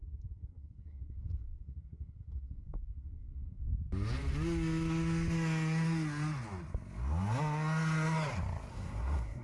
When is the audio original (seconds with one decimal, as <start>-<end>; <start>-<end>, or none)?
3.7-8.7